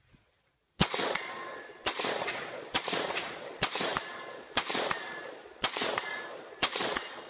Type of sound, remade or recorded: remade